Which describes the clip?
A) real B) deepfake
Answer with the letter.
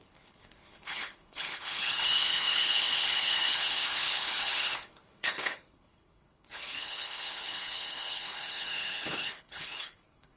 B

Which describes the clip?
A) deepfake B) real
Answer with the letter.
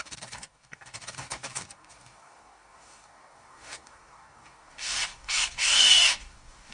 A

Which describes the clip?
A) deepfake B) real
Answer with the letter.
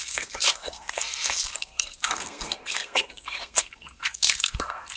A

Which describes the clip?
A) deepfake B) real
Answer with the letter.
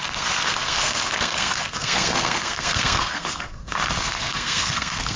A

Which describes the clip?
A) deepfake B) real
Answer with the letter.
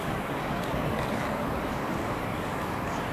A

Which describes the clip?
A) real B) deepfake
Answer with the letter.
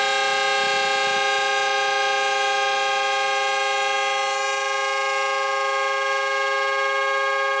A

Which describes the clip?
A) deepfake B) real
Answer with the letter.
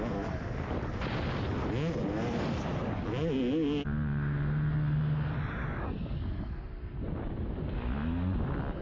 B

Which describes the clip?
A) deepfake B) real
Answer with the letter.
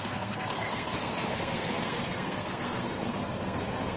A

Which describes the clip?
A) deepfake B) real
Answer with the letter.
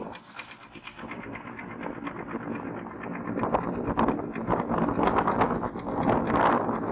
B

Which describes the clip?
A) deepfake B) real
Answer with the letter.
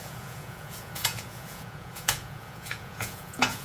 A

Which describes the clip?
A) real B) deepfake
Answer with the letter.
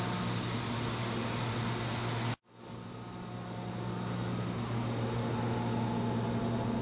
A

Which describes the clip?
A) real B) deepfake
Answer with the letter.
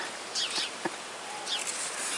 A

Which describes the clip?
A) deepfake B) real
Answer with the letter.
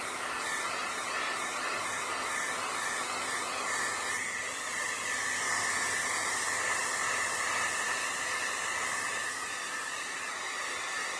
B